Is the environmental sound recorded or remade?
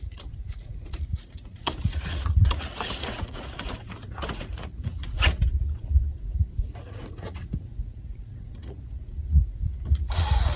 remade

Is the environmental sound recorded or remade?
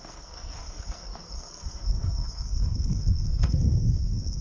remade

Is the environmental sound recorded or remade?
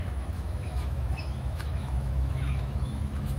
remade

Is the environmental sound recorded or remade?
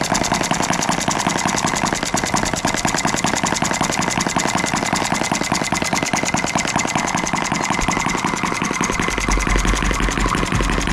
recorded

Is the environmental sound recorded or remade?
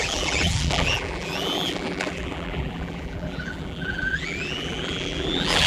remade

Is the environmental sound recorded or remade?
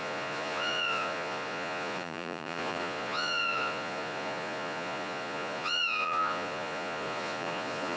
remade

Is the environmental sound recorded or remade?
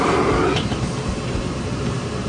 remade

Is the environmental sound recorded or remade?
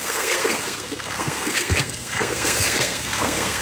remade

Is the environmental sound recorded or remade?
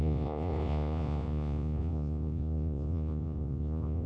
remade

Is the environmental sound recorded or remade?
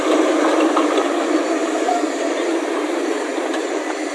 remade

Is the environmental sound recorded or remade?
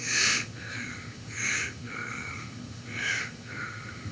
remade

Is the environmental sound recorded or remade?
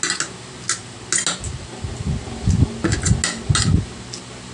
recorded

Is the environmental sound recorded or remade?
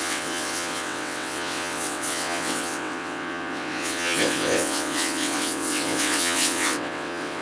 remade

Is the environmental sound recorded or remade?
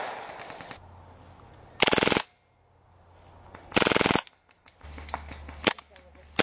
recorded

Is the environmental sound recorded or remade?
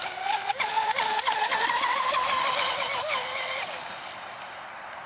remade